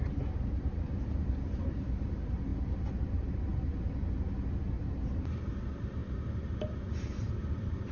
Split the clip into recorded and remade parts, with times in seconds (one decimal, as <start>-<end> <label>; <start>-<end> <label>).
0.0-2.5 remade; 2.5-3.0 recorded; 3.0-3.5 remade; 3.5-4.9 recorded; 4.9-6.0 remade; 6.0-6.8 recorded; 6.8-7.9 remade